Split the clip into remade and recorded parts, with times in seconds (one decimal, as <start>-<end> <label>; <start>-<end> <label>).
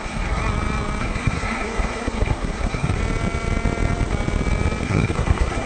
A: 0.0-0.4 remade; 0.4-1.0 recorded; 1.0-3.0 remade; 3.0-4.8 recorded; 4.8-5.7 remade